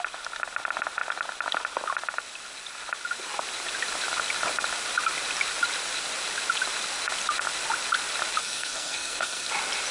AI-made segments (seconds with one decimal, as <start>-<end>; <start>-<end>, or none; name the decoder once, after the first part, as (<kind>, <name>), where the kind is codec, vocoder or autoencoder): 8.4-9.5 (codec, SNAC)